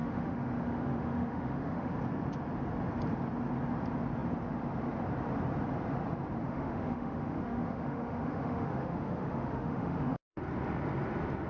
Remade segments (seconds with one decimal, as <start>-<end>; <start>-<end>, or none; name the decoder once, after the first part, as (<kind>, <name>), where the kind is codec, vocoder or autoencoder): 0.0-1.9 (autoencoder, DAC-VAE); 6.4-10.4